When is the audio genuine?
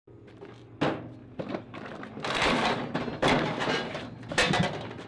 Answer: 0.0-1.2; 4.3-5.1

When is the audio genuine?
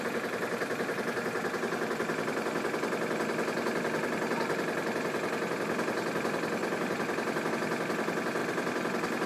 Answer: 0.0-6.6; 7.5-8.4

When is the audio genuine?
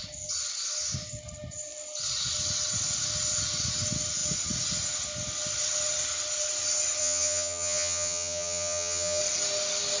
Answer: 0.0-7.0; 9.2-10.0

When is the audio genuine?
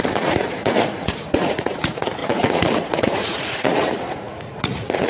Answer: none